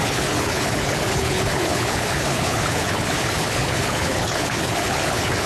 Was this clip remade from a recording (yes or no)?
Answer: yes